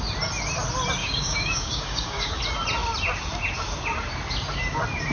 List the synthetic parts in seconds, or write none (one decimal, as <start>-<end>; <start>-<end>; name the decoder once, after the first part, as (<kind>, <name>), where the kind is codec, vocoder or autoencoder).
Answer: 1.0-2.4 (codec, DAC)